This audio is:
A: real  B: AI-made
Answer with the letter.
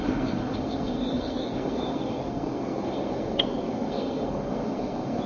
B